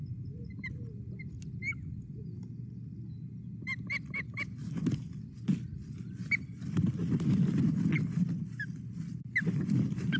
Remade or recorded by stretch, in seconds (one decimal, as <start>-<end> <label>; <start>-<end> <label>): 0.0-10.2 recorded